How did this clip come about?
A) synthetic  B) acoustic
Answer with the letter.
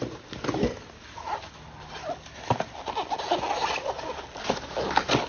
B